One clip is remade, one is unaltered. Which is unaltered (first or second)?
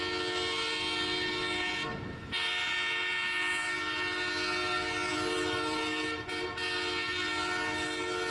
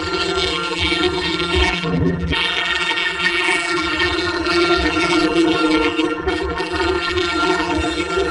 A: first